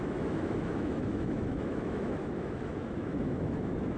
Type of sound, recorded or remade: remade